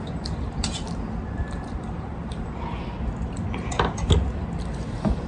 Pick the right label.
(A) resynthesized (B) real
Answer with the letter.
A